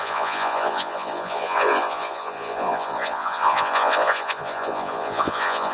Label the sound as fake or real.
fake